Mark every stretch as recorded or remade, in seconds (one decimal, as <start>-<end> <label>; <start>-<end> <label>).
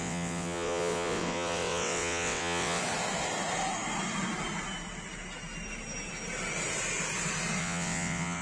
0.0-2.8 remade; 2.8-7.6 recorded; 7.6-8.4 remade